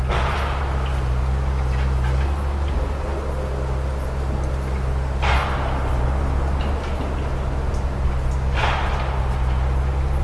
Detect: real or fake real